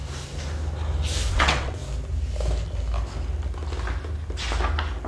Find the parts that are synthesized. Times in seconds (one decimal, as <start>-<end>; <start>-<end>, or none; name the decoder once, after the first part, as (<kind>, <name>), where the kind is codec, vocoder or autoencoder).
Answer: 1.3-1.8 (vocoder, WaveNeXt)